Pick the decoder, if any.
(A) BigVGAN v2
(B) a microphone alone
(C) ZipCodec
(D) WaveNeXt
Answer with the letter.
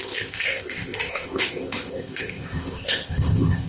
C